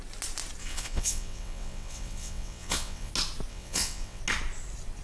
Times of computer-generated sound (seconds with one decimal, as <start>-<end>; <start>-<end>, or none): 0.6-3.1; 3.5-4.2

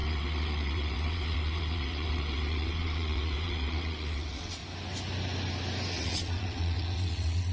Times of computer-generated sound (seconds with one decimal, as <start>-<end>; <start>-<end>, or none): 0.0-4.6; 5.9-7.5

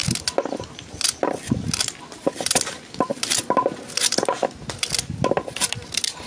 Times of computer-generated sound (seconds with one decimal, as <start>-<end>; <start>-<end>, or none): none

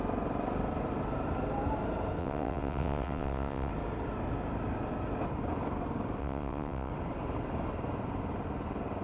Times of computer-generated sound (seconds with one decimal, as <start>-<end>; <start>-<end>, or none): 2.2-3.7; 6.2-6.9

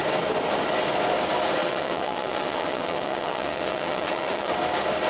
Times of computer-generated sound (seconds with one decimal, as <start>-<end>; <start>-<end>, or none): 1.6-4.5

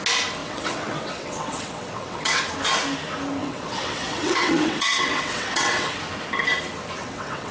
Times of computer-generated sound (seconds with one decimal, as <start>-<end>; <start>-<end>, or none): 0.4-2.4; 3.4-6.0; 7.0-7.5

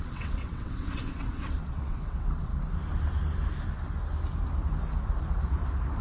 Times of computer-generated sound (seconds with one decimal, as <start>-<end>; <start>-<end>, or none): 0.0-2.5